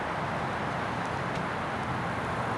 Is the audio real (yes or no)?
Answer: yes